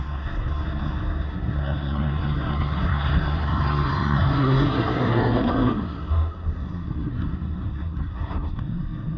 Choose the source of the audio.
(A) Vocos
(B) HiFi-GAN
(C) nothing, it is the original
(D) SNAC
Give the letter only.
D